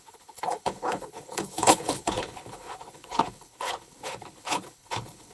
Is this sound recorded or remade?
remade